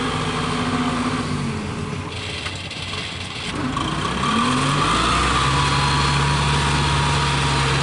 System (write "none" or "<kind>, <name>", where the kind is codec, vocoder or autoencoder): none